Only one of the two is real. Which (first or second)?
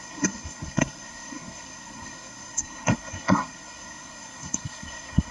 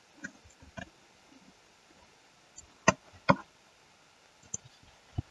second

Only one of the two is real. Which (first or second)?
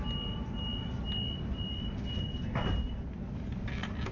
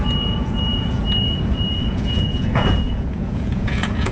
first